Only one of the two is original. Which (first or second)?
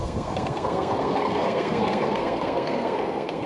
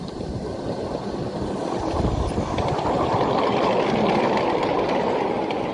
second